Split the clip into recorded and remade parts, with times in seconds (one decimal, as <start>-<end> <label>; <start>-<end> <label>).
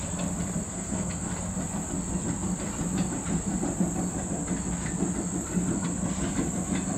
0.0-0.7 recorded; 0.7-1.3 remade; 1.3-7.0 recorded